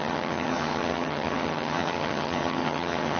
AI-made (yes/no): yes